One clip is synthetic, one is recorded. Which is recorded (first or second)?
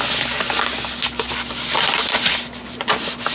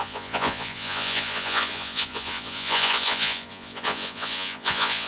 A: first